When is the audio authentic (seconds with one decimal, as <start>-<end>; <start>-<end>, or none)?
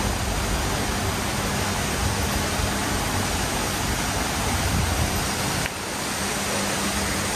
0.0-7.4